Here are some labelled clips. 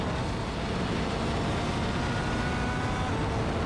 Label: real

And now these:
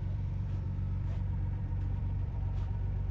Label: fake